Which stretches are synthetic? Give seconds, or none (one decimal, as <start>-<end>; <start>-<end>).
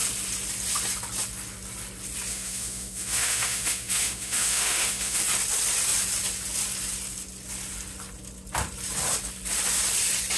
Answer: 2.3-5.2